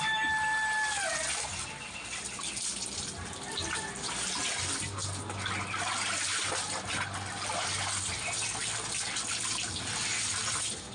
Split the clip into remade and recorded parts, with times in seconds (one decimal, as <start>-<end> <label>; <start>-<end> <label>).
0.0-10.9 recorded